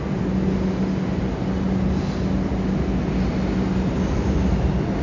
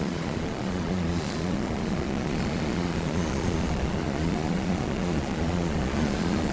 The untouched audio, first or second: first